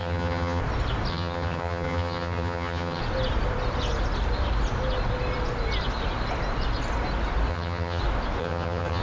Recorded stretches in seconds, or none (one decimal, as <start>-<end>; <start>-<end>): 0.6-1.1; 3.0-7.5; 8.0-8.4